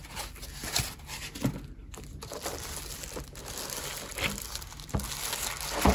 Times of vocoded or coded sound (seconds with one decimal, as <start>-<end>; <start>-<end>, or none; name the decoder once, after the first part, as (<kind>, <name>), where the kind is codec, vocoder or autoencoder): none